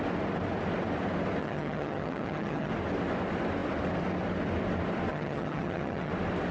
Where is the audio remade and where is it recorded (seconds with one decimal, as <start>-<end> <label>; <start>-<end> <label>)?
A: 0.0-1.4 recorded; 1.4-2.7 remade; 2.7-5.1 recorded; 5.1-6.1 remade; 6.1-6.5 recorded